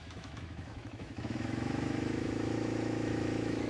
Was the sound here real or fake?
fake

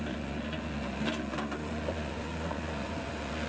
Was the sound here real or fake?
fake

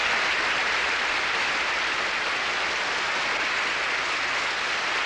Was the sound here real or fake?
real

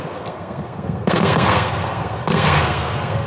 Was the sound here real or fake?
fake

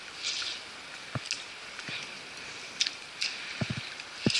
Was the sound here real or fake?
real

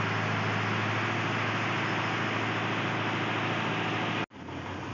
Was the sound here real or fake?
real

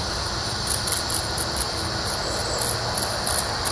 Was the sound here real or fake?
real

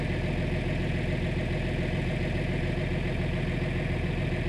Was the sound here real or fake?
real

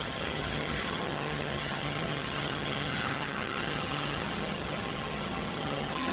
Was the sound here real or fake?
fake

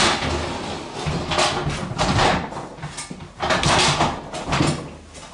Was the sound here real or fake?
real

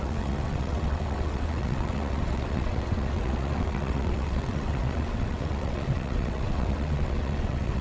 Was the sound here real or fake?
fake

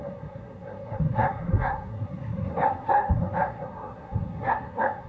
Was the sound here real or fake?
fake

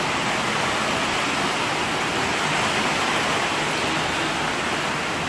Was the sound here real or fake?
real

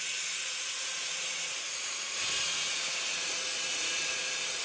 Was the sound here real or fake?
fake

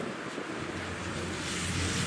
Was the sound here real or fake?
real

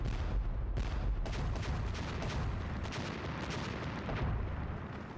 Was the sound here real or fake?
real